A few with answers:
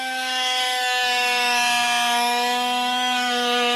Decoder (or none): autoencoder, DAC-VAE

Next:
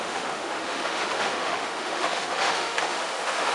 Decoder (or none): autoencoder, DAC-VAE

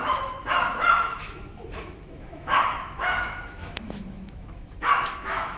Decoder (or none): autoencoder, DAC-VAE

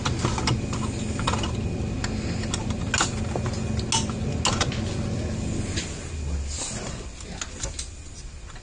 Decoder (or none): none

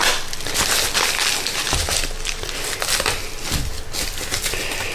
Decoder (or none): none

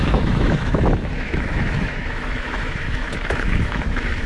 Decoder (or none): autoencoder, DAC-VAE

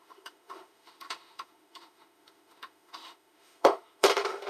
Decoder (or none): autoencoder, DAC-VAE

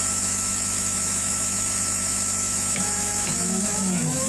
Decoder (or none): autoencoder, DAC-VAE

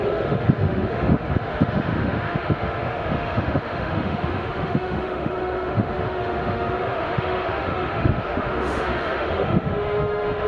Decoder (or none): autoencoder, DAC-VAE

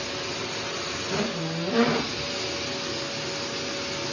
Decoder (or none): none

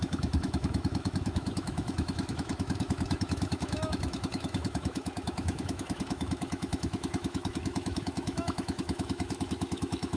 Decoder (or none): autoencoder, DAC-VAE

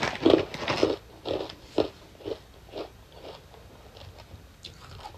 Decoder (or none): none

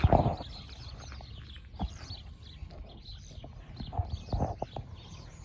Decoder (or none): none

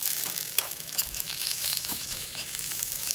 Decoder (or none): autoencoder, DAC-VAE